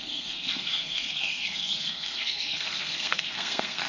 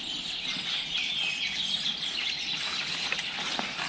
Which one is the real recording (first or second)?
second